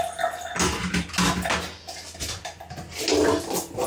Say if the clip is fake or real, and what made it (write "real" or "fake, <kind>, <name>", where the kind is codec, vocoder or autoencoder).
real